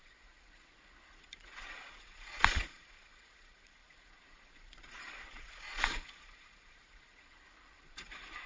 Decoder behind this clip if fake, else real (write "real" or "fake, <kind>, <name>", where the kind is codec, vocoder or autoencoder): fake, vocoder, Vocos